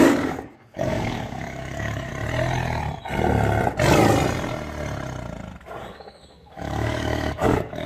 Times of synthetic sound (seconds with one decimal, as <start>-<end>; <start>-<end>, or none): 0.0-2.1; 5.8-7.9

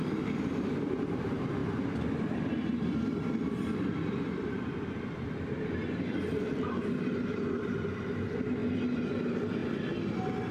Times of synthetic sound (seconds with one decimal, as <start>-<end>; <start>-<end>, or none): 0.0-5.8; 6.4-8.6; 9.2-9.6